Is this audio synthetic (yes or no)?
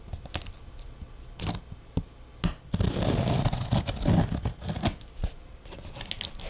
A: no